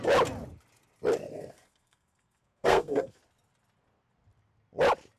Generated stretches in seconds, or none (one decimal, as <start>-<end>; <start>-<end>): 1.3-3.2